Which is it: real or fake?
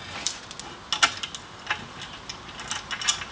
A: real